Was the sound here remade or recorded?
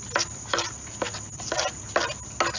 recorded